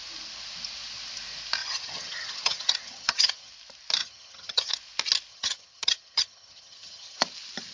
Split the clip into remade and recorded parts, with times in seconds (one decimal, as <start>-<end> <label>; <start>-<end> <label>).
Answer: 0.0-1.6 recorded; 1.6-3.5 remade; 3.5-4.0 recorded; 4.0-4.7 remade; 4.7-5.3 recorded; 5.3-7.2 remade; 7.2-7.7 recorded